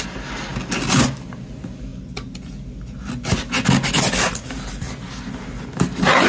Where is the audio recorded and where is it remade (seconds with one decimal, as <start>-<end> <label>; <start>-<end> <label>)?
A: 0.0-6.3 recorded